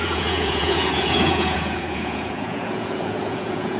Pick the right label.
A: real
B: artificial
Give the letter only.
B